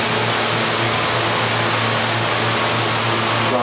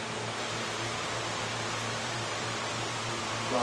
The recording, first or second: first